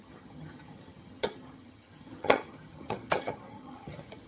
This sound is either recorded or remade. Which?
remade